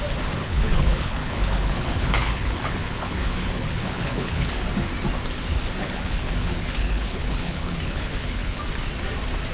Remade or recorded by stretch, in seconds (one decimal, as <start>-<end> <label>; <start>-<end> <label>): 0.0-0.4 recorded; 0.4-4.5 remade; 4.5-5.8 recorded; 5.8-8.6 remade; 8.6-9.5 recorded